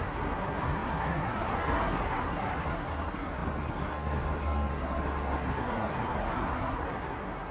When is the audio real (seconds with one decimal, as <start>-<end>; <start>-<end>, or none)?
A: none